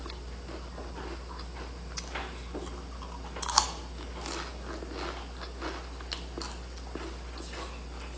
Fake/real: real